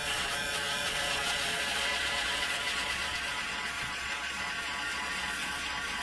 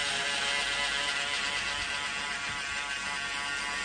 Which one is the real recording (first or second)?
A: second